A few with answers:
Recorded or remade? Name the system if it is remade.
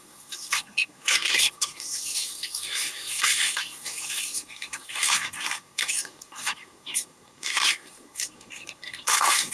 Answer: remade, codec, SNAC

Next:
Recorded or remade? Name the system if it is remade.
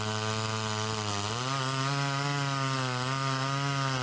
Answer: recorded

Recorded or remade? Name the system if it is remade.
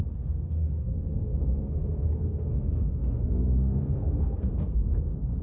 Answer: remade, codec, SNAC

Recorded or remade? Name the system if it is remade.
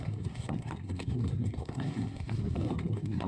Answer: remade, codec, SNAC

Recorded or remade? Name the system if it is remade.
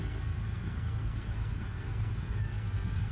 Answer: remade, codec, SNAC